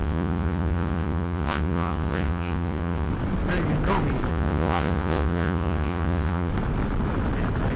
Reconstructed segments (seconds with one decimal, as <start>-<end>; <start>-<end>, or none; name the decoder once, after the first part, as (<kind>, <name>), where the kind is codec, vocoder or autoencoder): 0.0-3.1 (vocoder, Vocos); 4.3-6.5